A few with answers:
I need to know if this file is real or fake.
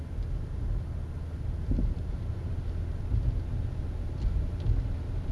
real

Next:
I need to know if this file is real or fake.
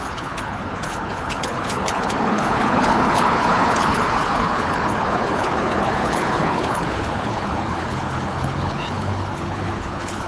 fake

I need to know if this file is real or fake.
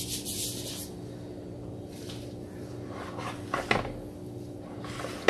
real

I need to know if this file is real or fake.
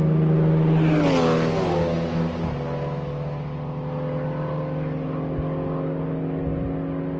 real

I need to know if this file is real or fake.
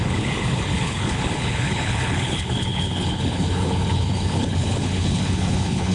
fake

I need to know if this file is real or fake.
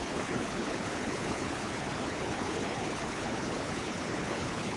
fake